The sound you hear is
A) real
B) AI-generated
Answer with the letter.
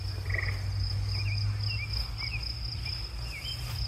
A